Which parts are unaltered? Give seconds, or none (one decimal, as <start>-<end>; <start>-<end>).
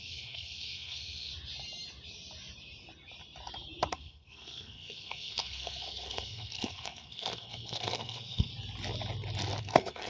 1.3-3.9; 8.5-9.6